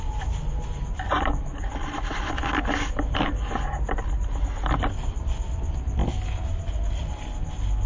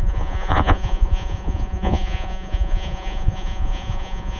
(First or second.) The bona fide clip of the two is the first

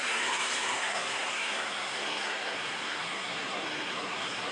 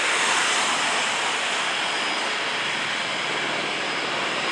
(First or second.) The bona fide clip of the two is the second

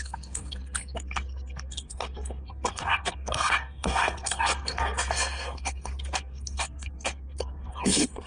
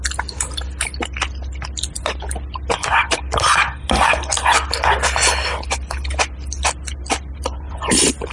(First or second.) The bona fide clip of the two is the second